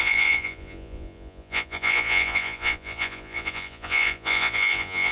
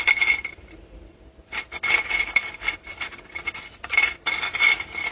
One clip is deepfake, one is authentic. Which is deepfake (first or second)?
first